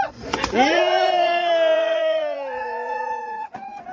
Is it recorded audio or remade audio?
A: remade